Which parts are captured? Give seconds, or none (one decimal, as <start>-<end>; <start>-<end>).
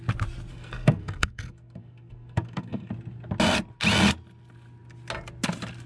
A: 0.0-0.5; 2.9-5.9